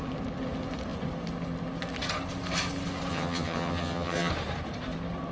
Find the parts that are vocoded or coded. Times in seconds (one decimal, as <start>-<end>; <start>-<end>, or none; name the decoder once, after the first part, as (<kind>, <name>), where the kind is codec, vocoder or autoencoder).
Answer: 3.1-4.3 (vocoder, HiFi-GAN)